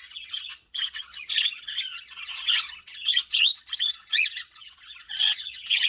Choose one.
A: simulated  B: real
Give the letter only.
A